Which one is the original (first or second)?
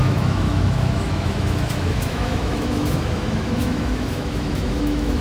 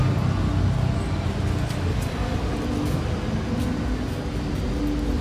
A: second